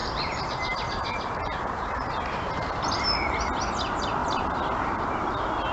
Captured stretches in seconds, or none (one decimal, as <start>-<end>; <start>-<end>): 2.5-4.2; 4.9-5.7